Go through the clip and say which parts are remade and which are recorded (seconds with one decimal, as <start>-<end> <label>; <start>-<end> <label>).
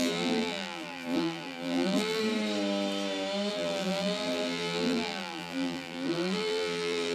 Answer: 0.0-2.2 remade; 2.2-3.5 recorded; 3.5-7.1 remade